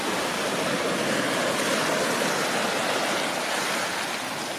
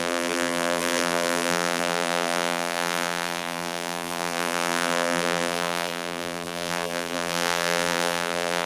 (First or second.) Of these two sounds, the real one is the first